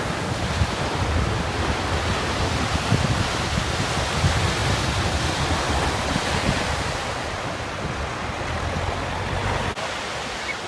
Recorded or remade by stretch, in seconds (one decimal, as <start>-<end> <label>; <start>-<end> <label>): 0.0-10.7 recorded